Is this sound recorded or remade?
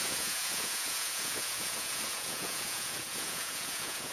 remade